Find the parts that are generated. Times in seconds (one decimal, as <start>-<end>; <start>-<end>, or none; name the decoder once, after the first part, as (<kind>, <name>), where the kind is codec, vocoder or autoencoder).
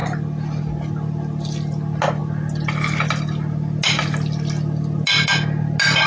none